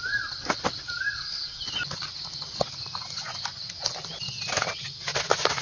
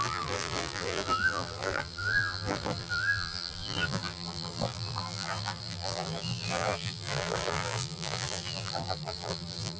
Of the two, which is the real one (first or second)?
first